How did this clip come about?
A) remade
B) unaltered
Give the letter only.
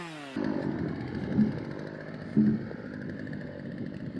B